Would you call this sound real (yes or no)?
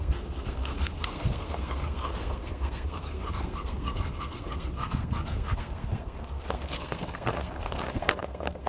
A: no